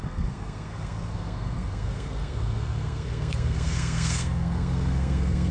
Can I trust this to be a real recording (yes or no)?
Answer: no